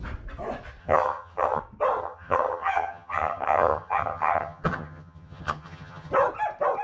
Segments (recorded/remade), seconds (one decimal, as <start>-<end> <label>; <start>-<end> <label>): 0.0-0.8 recorded; 0.8-1.6 remade; 1.6-2.0 recorded; 2.0-6.1 remade; 6.1-6.8 recorded